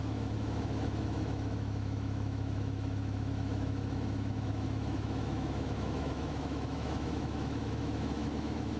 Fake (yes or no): yes